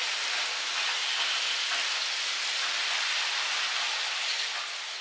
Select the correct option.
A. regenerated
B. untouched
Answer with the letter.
B